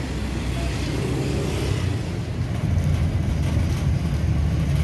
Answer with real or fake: real